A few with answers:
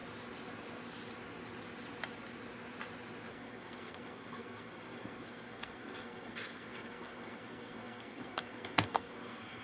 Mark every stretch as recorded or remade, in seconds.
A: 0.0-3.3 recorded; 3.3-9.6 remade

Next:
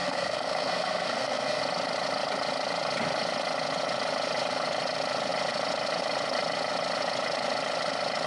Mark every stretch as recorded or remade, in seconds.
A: 0.0-1.6 remade; 1.6-8.3 recorded

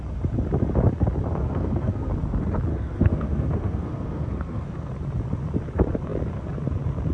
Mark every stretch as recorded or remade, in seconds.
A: 0.0-1.4 recorded; 1.4-2.1 remade; 2.1-2.7 recorded; 2.7-4.9 remade; 4.9-7.1 recorded

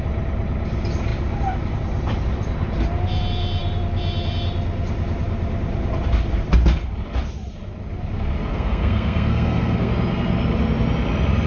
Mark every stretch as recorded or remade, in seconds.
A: 0.0-8.5 recorded; 8.5-9.9 remade; 9.9-11.5 recorded